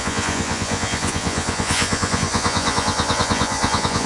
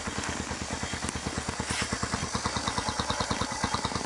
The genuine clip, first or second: second